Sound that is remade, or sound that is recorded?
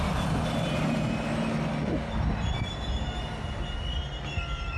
recorded